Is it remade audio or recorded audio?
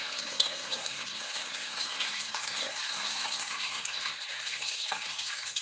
remade